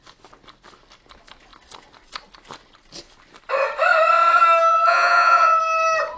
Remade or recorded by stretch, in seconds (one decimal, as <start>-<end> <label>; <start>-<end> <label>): 0.0-4.7 recorded; 4.7-5.6 remade; 5.6-6.2 recorded